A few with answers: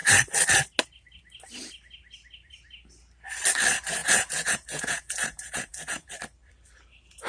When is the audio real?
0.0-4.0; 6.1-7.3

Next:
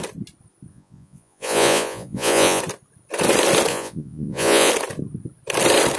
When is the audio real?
0.0-0.7; 2.6-3.7; 4.7-6.0

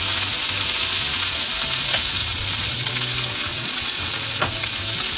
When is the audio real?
0.0-2.2; 2.9-3.5; 4.7-5.2

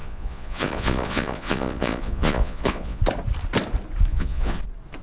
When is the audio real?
3.0-4.1; 4.6-5.0

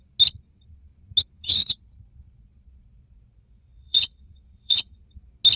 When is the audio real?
0.0-1.6; 5.0-5.6